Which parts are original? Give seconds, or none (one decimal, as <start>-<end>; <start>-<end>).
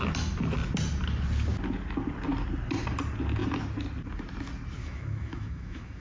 0.0-4.8